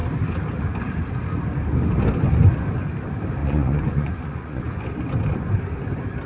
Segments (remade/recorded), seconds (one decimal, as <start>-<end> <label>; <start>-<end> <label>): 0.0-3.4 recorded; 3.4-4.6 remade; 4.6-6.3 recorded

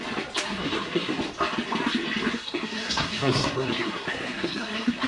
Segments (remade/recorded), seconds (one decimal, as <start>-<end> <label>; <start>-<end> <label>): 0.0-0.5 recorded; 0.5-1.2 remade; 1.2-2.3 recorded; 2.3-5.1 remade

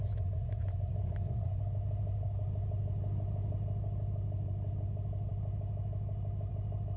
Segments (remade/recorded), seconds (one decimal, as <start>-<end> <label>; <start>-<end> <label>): 0.0-1.6 remade; 1.6-7.0 recorded

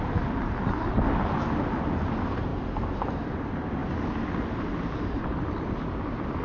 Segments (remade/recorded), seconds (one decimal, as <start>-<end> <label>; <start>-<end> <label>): 0.0-6.4 recorded